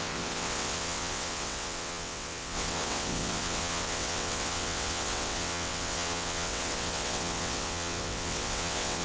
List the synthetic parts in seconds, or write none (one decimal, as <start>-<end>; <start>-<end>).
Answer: 0.0-9.0